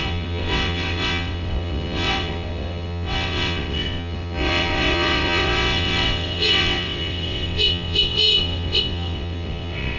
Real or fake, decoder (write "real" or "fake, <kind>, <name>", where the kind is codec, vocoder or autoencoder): fake, vocoder, WaveNeXt